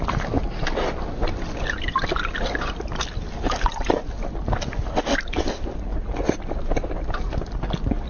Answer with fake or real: real